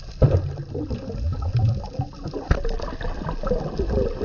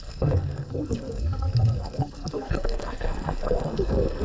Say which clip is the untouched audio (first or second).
first